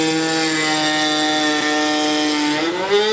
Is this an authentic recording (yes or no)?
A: yes